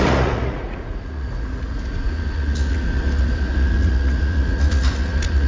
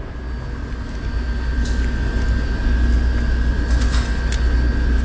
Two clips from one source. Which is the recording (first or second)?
second